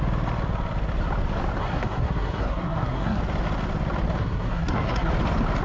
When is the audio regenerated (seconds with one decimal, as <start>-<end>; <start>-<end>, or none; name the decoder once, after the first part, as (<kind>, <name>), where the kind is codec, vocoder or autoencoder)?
1.6-3.2 (codec, SNAC); 4.2-5.1